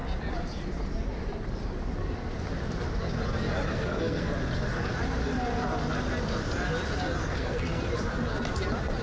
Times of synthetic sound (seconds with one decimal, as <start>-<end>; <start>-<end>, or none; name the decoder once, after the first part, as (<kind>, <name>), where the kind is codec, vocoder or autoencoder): 3.7-4.3 (codec, SNAC); 7.2-7.8